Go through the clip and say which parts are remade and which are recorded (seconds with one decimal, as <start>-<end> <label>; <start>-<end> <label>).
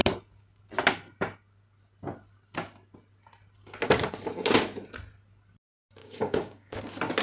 0.0-6.0 recorded; 6.0-6.8 remade; 6.8-7.2 recorded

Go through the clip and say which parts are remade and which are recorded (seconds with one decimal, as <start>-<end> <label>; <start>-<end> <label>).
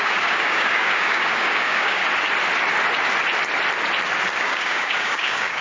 0.0-2.0 remade; 2.0-4.4 recorded; 4.4-5.6 remade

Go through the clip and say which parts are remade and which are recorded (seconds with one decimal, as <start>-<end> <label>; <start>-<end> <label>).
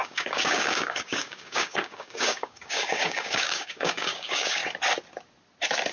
0.0-4.6 remade; 4.6-5.9 recorded